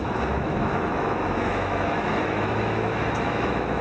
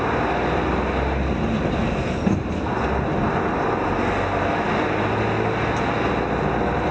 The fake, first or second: first